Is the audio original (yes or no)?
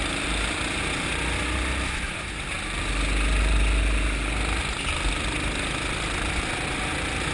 yes